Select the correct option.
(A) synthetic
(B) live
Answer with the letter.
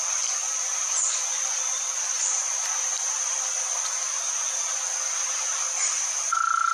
B